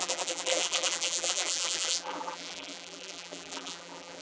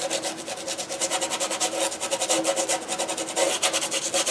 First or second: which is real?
second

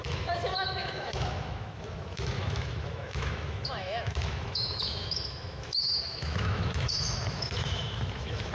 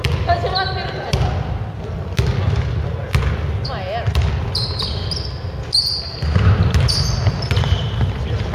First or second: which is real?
second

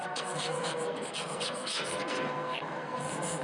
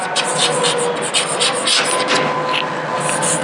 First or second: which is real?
second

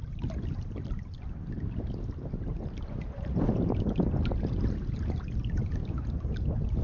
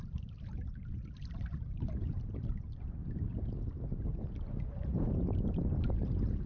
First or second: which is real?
second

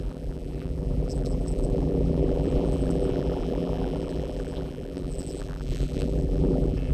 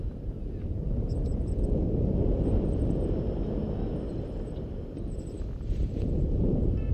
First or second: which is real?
second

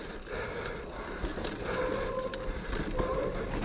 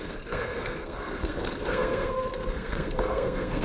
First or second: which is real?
first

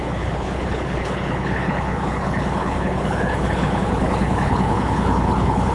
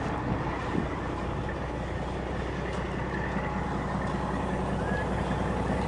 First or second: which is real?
second